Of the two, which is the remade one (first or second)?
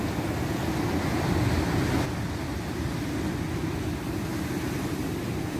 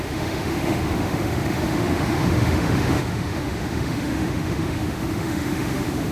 second